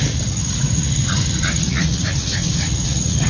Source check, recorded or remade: remade